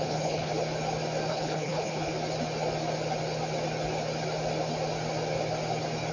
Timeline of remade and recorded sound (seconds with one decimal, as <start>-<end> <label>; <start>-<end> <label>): 0.0-0.5 remade; 0.5-1.3 recorded; 1.3-2.1 remade; 2.1-6.1 recorded

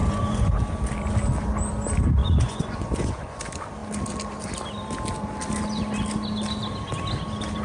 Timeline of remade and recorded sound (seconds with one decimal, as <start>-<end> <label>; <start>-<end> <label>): 0.0-0.5 remade; 0.5-2.2 recorded; 2.2-3.4 remade; 3.4-7.6 recorded

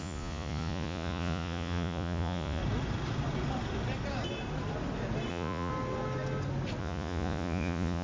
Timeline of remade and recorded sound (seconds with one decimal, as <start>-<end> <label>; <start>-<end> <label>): 0.0-2.6 remade; 2.6-5.3 recorded; 5.3-5.7 remade; 5.7-6.8 recorded; 6.8-8.0 remade

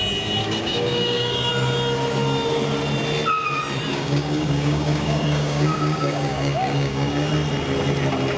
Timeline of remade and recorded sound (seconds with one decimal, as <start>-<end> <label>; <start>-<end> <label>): 0.0-0.4 recorded; 0.4-1.5 remade; 1.5-3.9 recorded; 3.9-7.3 remade; 7.3-8.4 recorded

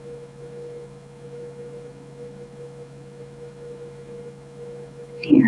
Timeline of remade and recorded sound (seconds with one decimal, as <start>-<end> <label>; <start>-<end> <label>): 0.0-5.5 remade

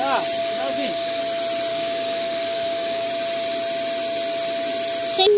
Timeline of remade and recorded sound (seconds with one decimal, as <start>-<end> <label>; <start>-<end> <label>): 0.0-0.4 recorded; 0.4-1.2 remade; 1.2-1.7 recorded; 1.7-3.1 remade; 3.1-5.4 recorded

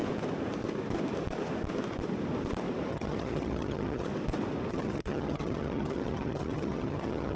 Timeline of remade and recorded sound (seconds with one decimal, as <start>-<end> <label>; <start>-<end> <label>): 0.0-2.9 recorded; 2.9-4.1 remade; 4.1-4.7 recorded; 4.7-7.4 remade